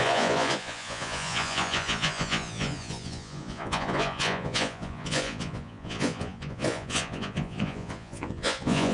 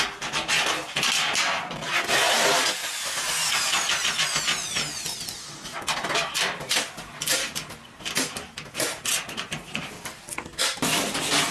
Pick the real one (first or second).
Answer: second